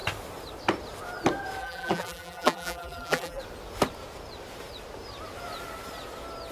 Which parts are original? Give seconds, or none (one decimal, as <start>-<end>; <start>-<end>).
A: 0.0-1.6; 3.4-6.5